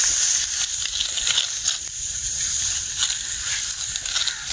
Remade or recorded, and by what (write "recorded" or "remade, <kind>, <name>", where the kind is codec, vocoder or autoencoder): recorded